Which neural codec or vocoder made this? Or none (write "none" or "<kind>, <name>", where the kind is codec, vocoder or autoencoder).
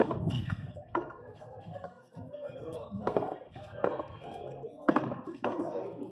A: codec, SNAC